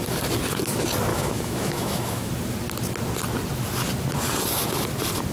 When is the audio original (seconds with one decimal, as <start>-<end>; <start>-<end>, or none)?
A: 0.0-1.1; 2.3-5.3